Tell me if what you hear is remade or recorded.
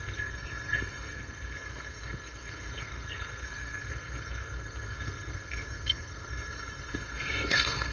remade